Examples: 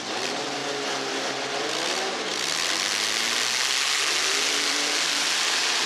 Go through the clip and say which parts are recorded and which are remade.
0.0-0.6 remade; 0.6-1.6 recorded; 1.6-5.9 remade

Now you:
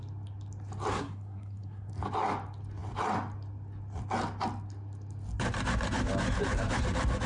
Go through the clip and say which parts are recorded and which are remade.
0.0-0.9 recorded; 0.9-1.9 remade; 1.9-7.3 recorded

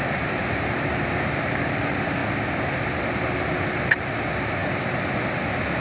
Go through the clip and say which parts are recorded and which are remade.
0.0-2.2 remade; 2.2-2.7 recorded; 2.7-5.8 remade

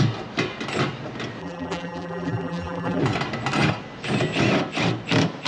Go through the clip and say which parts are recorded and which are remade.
0.0-1.4 recorded; 1.4-3.0 remade; 3.0-5.5 recorded

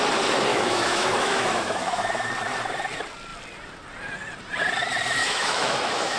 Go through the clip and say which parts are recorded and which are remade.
0.0-0.5 recorded; 0.5-2.3 remade; 2.3-5.2 recorded; 5.2-6.2 remade

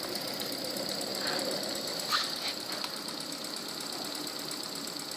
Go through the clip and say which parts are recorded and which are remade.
0.0-5.2 recorded